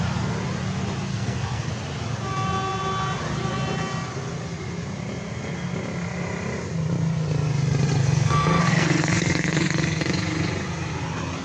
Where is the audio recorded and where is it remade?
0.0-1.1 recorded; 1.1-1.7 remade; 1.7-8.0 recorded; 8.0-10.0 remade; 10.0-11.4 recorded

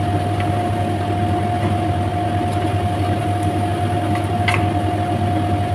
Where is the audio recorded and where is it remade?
0.0-5.7 recorded

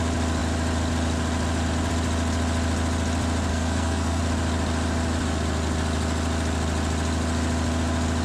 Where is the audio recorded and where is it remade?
0.0-3.5 recorded; 3.5-4.2 remade; 4.2-8.2 recorded